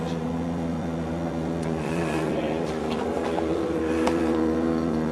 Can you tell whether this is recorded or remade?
remade